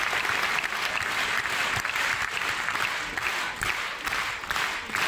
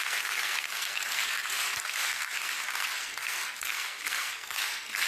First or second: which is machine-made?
second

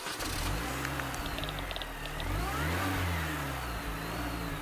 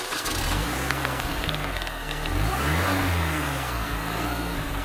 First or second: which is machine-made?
second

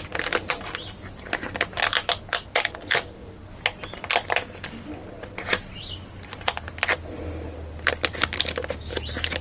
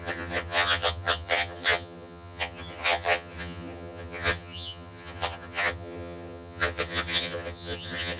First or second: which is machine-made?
second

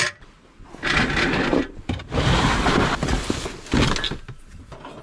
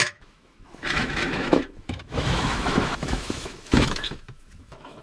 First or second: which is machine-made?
second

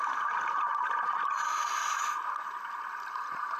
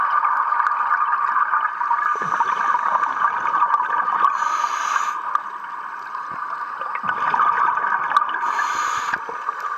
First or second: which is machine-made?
first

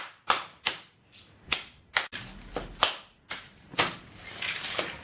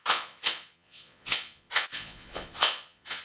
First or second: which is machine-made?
second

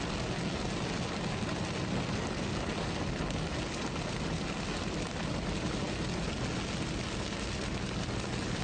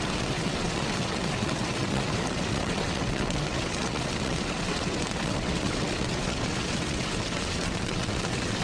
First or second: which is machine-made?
second